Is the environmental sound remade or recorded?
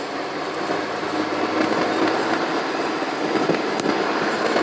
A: recorded